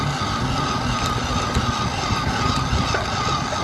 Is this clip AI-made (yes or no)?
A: no